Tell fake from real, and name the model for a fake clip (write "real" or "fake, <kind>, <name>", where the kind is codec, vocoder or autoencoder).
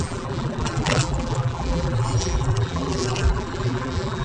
fake, vocoder, BigVGAN v2